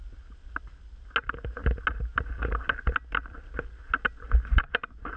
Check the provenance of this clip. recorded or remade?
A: recorded